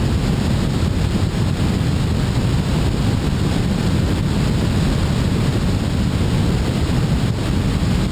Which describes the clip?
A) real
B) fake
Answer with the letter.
A